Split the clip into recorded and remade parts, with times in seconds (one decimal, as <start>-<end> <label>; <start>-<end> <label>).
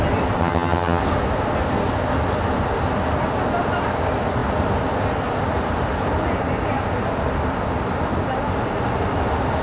0.0-0.4 recorded; 0.4-1.0 remade; 1.0-9.6 recorded